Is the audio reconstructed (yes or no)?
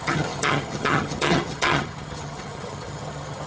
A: yes